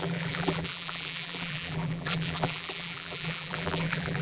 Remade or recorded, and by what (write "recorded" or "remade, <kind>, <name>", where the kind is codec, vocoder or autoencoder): remade, vocoder, BigVGAN v2